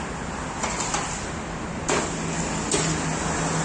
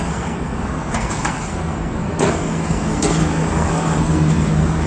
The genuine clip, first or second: first